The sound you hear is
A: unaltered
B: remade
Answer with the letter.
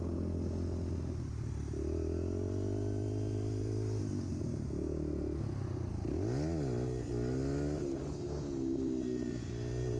A